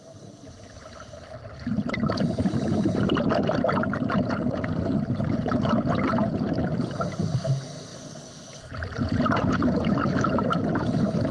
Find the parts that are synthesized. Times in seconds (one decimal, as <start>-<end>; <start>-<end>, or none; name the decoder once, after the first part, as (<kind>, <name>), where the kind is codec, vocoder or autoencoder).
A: none